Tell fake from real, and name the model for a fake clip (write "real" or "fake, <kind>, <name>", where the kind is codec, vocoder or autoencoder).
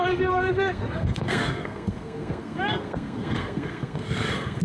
fake, codec, SNAC